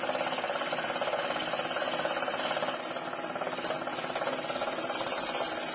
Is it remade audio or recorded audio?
recorded